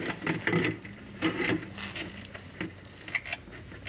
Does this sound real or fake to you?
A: real